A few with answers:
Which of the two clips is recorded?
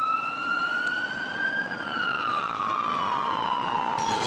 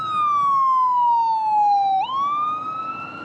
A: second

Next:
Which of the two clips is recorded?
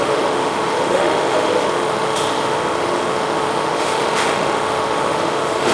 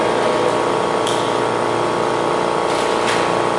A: second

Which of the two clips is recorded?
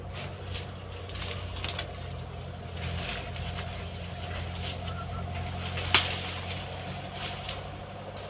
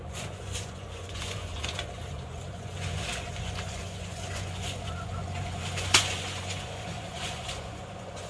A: first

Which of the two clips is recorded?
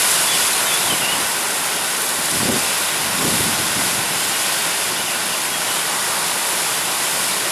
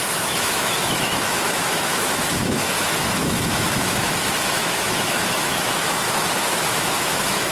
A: first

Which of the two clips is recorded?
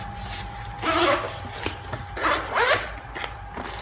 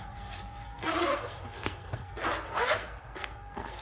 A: first